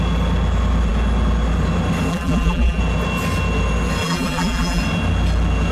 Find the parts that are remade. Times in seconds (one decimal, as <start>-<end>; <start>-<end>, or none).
2.1-2.8; 4.0-4.8